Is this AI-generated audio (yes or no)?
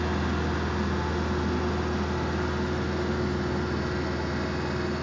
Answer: no